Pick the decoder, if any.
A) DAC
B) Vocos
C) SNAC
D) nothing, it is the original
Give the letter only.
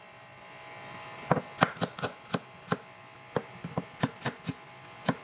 D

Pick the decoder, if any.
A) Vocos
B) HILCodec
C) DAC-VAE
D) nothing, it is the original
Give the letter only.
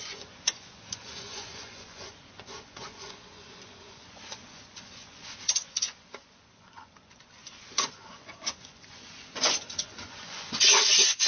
A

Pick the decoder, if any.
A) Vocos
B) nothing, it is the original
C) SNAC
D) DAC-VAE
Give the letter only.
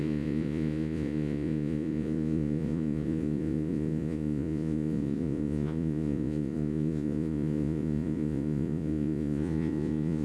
A